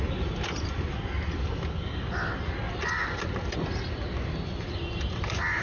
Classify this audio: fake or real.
real